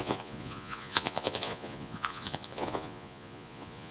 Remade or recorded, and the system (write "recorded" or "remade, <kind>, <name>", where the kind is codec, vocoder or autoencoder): remade, vocoder, Vocos